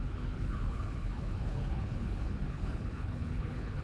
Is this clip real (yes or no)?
no